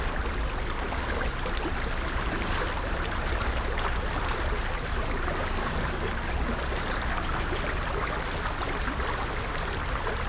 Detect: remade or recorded recorded